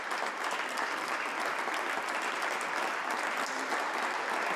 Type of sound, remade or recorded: recorded